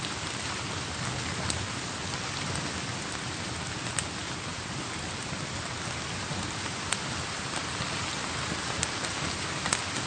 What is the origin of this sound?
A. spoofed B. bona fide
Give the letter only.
B